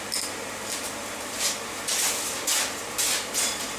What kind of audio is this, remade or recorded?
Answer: recorded